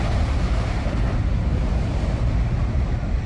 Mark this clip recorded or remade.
recorded